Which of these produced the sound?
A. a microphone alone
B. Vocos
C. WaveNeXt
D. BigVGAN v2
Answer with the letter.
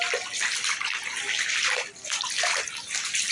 A